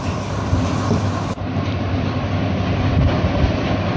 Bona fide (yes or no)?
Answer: no